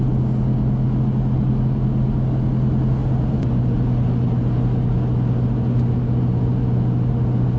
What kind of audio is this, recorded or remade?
recorded